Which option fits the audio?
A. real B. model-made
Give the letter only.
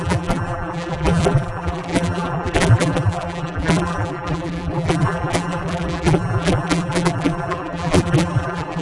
B